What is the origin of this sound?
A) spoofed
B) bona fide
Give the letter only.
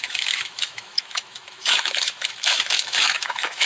A